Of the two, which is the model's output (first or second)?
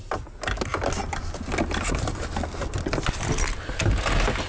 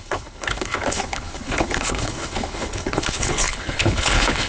second